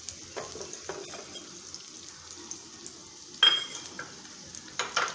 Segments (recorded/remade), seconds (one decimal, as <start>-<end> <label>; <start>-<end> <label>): 0.0-5.1 recorded